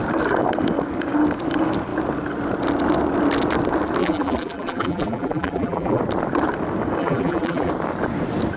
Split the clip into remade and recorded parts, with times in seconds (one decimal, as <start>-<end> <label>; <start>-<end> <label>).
0.0-4.0 recorded; 4.0-6.0 remade; 6.0-7.0 recorded; 7.0-7.7 remade; 7.7-8.6 recorded